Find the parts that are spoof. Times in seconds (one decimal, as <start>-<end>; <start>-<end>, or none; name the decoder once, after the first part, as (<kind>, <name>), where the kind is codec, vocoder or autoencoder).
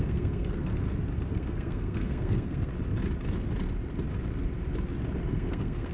0.0-0.7 (codec, SNAC); 1.3-2.7; 5.3-5.9